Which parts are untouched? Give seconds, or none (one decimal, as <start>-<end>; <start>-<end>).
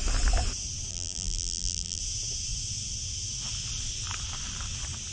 0.0-0.9; 2.0-5.1